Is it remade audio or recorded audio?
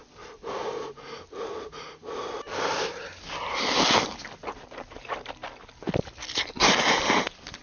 recorded